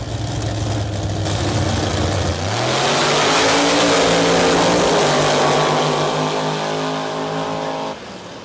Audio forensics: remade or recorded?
recorded